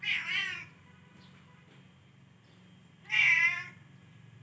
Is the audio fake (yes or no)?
no